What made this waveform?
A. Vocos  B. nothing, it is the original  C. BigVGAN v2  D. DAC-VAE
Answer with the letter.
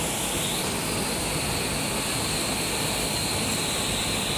B